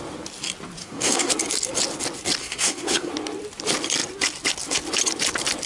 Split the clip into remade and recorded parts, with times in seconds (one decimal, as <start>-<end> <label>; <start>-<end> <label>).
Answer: 0.0-0.8 recorded; 0.8-1.3 remade; 1.3-2.4 recorded; 2.4-3.1 remade; 3.1-5.7 recorded